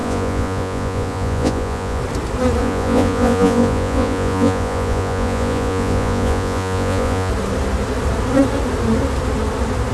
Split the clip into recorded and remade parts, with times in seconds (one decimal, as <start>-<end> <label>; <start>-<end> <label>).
0.0-2.0 remade; 2.0-2.6 recorded; 2.6-7.3 remade; 7.3-9.9 recorded